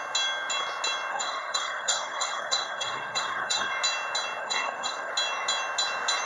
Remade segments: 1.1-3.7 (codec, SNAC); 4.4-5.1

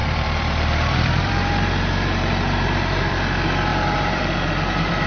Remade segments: 0.0-3.1 (vocoder, BigVGAN v2); 3.7-5.1

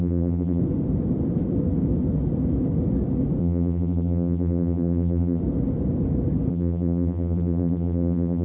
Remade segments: 0.0-0.6 (vocoder, BigVGAN v2); 3.4-5.4; 6.5-8.4